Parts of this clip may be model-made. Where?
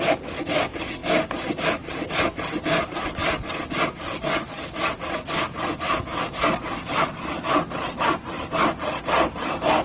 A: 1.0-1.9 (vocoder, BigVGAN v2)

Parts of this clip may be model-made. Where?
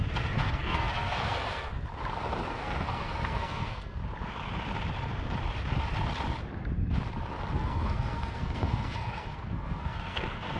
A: 0.0-1.7 (codec, SNAC); 2.5-4.0; 7.5-10.6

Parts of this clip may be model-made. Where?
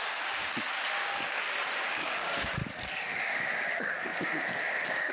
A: 1.9-2.6 (codec, DAC); 3.2-5.1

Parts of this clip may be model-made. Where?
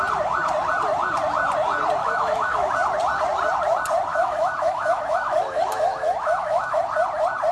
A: 2.0-2.7 (autoencoder, DAC-VAE); 4.1-6.8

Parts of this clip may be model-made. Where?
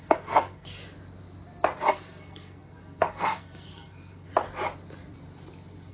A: 0.0-0.8 (codec, SNAC); 1.9-4.3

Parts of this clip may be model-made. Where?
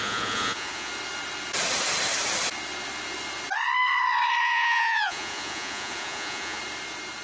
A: 0.0-0.9 (vocoder, Vocos); 4.4-6.6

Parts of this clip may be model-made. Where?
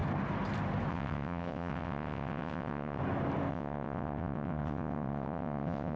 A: 0.9-3.0 (vocoder, WaveNeXt); 3.5-6.0